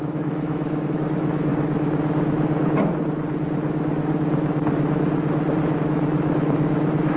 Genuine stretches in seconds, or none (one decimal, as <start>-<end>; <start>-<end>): 1.5-5.8